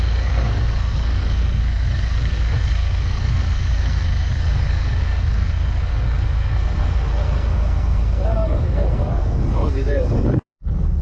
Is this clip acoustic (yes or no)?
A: no